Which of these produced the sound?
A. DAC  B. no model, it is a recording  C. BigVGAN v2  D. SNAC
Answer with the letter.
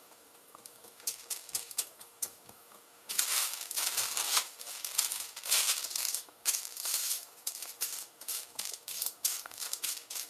A